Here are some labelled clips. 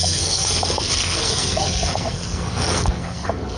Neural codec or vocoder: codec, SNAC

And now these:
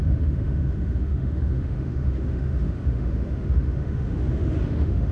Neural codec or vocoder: autoencoder, DAC-VAE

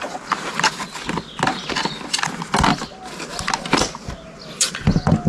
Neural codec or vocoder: none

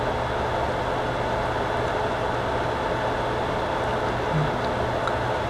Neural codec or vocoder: none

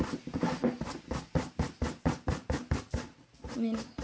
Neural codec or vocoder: none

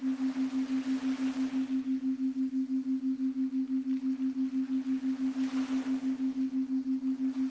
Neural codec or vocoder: none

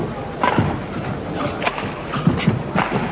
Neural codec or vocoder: none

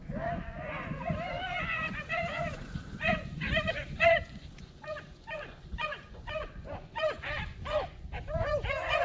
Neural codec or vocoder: vocoder, Vocos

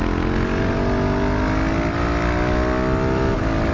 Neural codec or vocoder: none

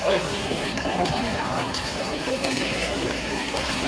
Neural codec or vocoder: codec, SNAC